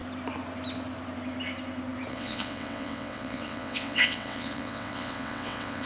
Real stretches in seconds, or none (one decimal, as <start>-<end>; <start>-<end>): 0.0-2.1